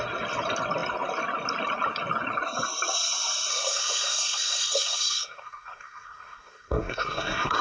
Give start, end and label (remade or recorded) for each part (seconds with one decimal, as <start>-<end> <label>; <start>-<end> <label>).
0.0-3.5 recorded; 3.5-7.6 remade

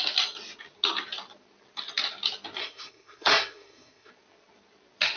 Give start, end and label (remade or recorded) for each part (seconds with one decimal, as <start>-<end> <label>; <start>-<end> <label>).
0.0-2.6 recorded; 2.6-4.1 remade; 4.1-5.2 recorded

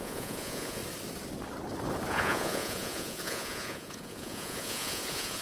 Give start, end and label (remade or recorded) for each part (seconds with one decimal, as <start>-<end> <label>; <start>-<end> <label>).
0.0-0.8 remade; 0.8-2.1 recorded; 2.1-5.4 remade

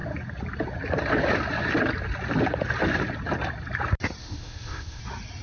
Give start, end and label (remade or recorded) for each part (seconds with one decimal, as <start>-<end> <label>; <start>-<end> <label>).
0.0-4.2 recorded; 4.2-5.0 remade; 5.0-5.4 recorded

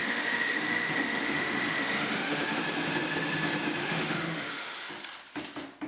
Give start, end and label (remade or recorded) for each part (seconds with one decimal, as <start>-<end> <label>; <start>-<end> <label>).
0.0-2.6 remade; 2.6-3.8 recorded; 3.8-4.9 remade; 4.9-5.9 recorded

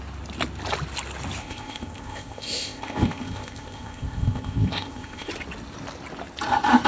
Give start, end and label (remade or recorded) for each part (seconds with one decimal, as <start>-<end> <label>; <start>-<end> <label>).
0.0-1.4 recorded; 1.4-5.3 remade; 5.3-6.9 recorded

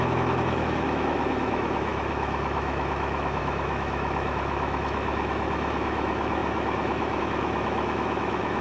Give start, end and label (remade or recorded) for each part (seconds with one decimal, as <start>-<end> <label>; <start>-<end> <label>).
0.0-8.6 remade